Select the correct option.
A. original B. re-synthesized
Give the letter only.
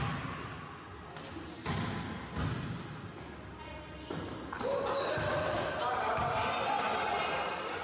A